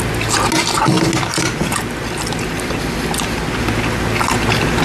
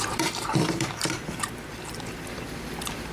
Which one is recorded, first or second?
first